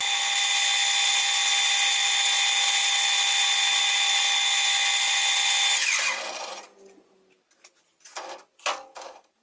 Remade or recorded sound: recorded